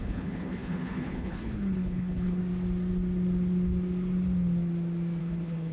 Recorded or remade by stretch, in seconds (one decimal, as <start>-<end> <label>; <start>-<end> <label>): 0.0-2.4 remade; 2.4-5.2 recorded; 5.2-5.7 remade